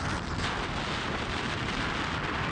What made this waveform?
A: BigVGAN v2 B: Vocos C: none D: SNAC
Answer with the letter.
C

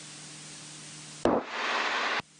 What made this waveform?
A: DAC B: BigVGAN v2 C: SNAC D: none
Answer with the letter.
D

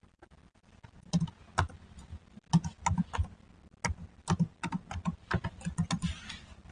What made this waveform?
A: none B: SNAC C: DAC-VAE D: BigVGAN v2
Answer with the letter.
A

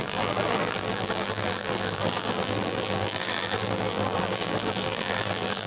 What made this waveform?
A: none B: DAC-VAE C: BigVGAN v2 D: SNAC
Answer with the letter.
C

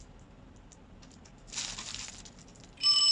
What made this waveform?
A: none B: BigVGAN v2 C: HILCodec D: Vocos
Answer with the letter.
A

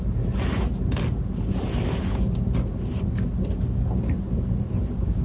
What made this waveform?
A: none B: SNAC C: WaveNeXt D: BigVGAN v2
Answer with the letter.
A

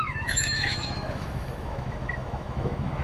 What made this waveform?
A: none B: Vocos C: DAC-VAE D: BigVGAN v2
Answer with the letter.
C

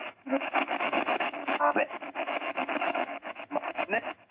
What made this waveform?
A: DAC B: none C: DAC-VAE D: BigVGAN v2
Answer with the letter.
C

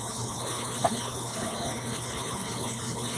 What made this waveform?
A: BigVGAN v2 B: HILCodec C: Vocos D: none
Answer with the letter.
B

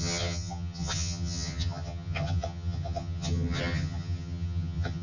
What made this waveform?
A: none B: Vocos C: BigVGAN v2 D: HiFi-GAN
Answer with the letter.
D